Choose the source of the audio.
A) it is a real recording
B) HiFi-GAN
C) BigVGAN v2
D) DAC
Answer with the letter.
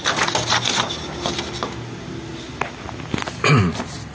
A